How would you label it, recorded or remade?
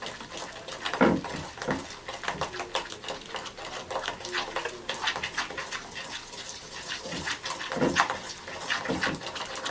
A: recorded